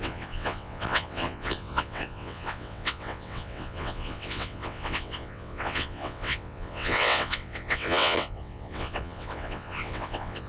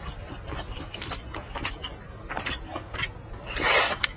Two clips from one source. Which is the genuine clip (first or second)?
second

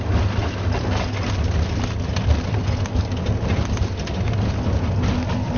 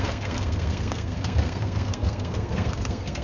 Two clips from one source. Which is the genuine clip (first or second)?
first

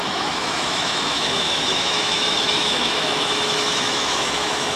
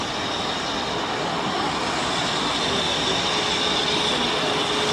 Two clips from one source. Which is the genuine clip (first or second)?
second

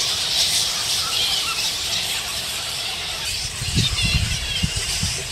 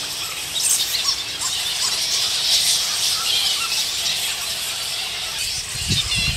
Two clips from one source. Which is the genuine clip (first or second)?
second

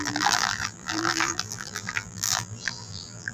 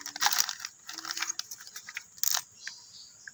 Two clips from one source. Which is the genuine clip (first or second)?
second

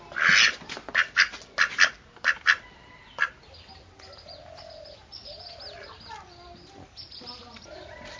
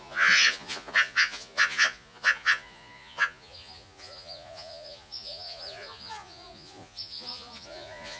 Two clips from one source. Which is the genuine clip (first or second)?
first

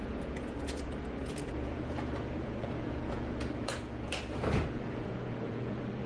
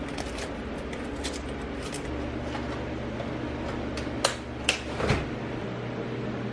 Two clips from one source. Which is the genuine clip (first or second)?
second